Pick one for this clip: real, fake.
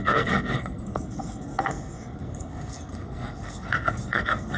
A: fake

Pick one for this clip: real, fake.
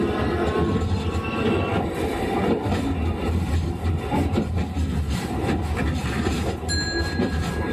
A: real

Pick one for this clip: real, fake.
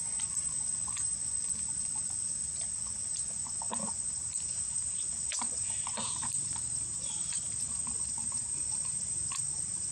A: fake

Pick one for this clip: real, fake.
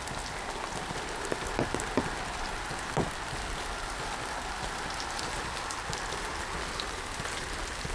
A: real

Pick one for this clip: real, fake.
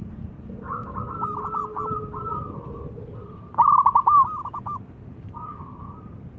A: real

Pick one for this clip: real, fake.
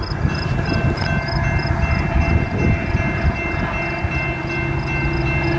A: real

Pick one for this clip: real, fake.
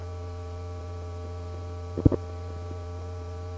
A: fake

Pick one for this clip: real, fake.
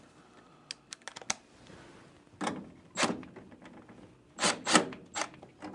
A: real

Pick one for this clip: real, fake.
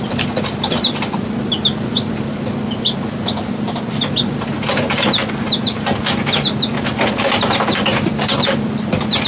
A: real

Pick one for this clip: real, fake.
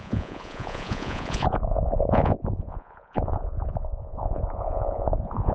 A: fake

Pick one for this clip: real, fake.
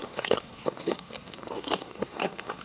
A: fake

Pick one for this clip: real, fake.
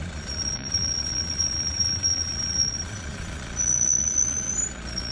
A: fake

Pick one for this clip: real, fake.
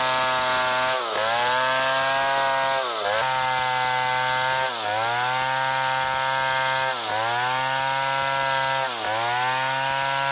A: real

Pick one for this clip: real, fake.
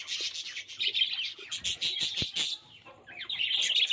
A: real